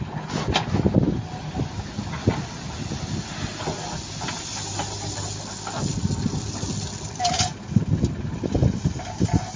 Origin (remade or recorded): recorded